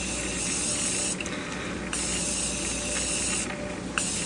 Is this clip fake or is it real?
real